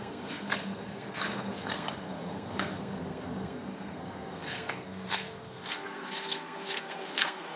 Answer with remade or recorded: remade